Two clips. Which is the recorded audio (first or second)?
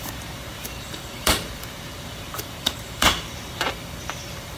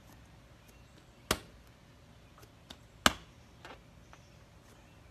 second